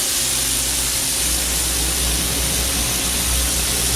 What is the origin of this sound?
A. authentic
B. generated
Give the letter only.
A